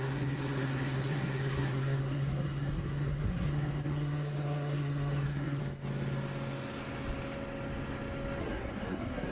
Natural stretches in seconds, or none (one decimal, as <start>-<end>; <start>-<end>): 5.6-8.4